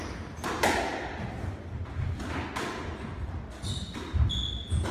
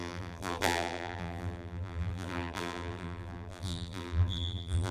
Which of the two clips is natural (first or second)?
first